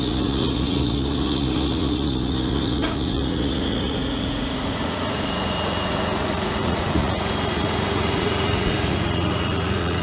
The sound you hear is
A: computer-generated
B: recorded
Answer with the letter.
A